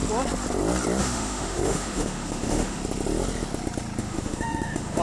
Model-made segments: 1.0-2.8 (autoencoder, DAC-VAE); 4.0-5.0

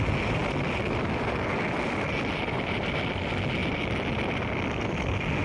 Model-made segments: none

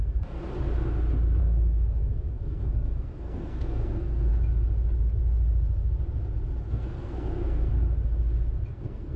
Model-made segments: 0.0-0.4 (codec, SNAC); 1.4-4.3; 6.7-7.7; 8.7-9.2